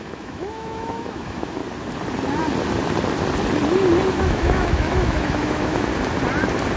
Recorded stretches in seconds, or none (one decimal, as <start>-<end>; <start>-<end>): 1.6-4.1; 5.9-6.8